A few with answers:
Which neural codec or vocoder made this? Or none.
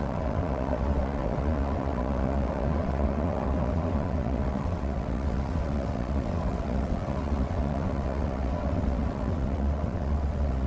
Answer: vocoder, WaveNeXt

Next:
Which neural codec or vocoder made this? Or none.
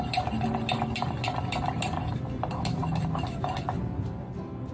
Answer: none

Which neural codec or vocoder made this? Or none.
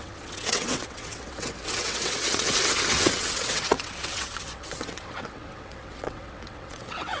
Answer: vocoder, WaveNeXt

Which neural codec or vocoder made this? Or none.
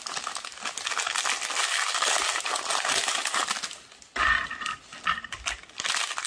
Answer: none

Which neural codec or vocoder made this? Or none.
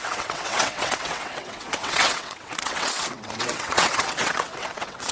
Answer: vocoder, WaveNeXt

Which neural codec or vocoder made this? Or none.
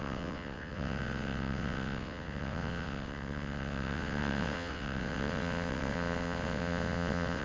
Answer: vocoder, WaveNeXt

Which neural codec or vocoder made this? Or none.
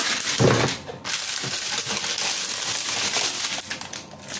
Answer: none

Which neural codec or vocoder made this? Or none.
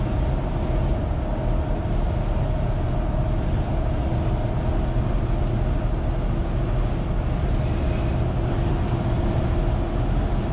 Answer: none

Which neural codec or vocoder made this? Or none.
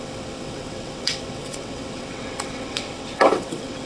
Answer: vocoder, WaveNeXt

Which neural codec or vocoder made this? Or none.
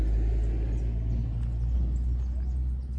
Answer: none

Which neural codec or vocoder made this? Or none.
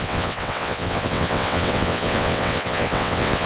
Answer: vocoder, WaveNeXt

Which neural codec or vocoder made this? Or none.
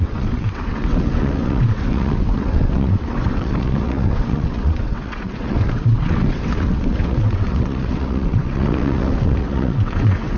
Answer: vocoder, WaveNeXt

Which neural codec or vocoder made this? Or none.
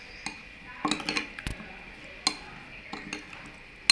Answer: none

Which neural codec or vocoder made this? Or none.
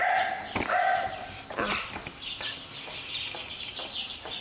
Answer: none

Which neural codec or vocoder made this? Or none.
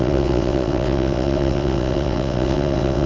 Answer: vocoder, WaveNeXt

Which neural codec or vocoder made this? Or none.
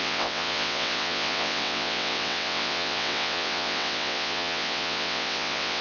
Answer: vocoder, WaveNeXt